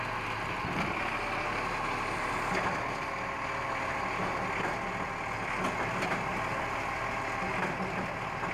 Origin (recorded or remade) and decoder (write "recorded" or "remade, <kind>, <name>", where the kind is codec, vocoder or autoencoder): recorded